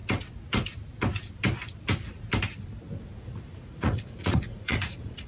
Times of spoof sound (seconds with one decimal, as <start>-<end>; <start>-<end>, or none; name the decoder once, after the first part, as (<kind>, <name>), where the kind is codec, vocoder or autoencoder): 3.2-5.3 (vocoder, Vocos)